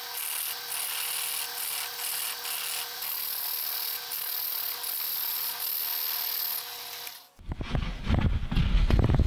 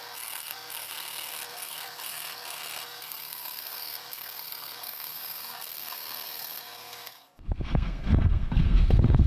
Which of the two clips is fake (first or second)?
second